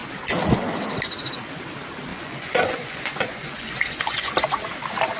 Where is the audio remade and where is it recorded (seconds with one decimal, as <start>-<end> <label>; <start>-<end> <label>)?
0.0-2.1 recorded; 2.1-4.3 remade; 4.3-5.2 recorded